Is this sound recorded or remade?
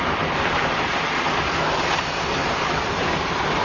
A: recorded